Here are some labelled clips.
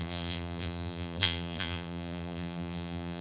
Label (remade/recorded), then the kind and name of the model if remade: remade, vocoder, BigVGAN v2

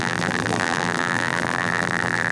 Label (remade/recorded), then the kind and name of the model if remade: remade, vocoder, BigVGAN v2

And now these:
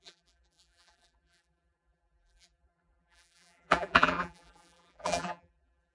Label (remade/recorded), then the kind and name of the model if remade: remade, vocoder, BigVGAN v2